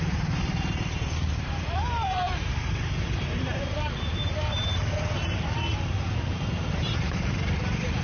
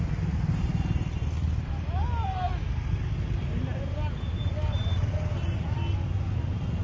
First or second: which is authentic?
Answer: second